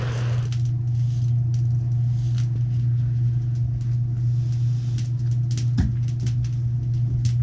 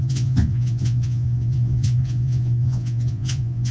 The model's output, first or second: second